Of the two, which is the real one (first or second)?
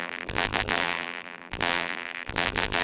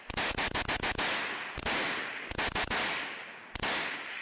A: second